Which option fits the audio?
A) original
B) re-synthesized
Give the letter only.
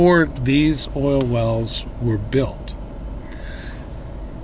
A